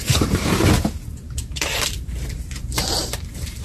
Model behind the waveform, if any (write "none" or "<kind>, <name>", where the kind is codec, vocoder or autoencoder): vocoder, BigVGAN v2